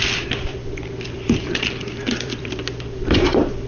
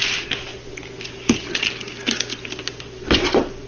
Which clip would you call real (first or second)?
second